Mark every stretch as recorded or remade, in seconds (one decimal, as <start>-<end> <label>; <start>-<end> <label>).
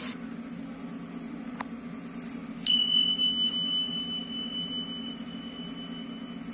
0.0-6.5 recorded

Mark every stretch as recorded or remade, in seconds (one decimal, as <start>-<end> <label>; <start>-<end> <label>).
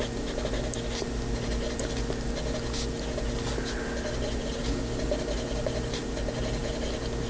0.0-7.3 recorded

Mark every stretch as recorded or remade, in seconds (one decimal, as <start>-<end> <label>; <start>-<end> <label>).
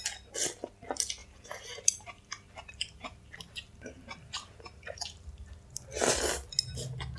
0.0-1.2 recorded; 1.2-5.5 remade; 5.5-7.2 recorded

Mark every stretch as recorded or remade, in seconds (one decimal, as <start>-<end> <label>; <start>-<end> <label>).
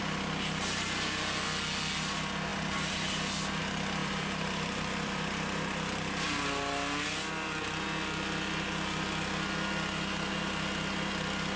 0.0-4.0 recorded; 4.0-5.3 remade; 5.3-11.6 recorded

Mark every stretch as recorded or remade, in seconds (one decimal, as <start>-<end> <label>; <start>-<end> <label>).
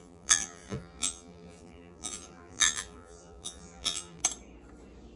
0.0-4.2 remade; 4.2-5.2 recorded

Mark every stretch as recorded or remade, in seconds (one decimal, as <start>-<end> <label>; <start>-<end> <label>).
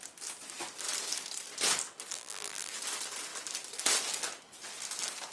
0.0-2.1 recorded; 2.1-2.7 remade; 2.7-5.3 recorded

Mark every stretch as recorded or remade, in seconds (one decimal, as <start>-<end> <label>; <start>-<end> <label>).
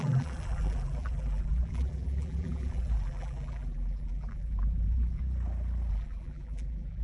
0.0-5.2 remade; 5.2-5.9 recorded; 5.9-7.0 remade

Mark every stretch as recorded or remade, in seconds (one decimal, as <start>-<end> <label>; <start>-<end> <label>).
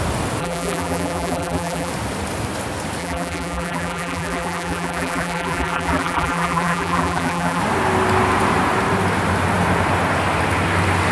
0.0-0.4 recorded; 0.4-1.9 remade; 1.9-3.0 recorded; 3.0-7.6 remade; 7.6-11.1 recorded